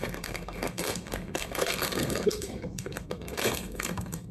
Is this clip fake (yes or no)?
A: yes